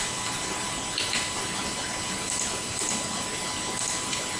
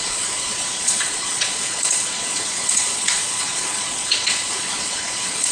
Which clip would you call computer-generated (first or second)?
second